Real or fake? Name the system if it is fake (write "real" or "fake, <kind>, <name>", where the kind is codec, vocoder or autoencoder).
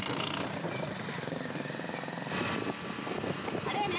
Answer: real